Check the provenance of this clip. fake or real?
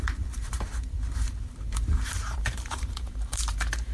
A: fake